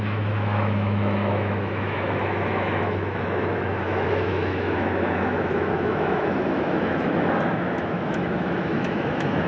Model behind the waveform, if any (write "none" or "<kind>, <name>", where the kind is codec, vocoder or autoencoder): autoencoder, DAC-VAE